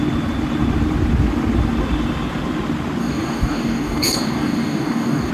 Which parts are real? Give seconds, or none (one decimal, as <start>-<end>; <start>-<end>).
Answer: 0.0-3.0